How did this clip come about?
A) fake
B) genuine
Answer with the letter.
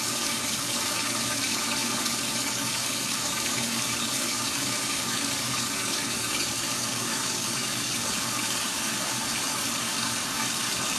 A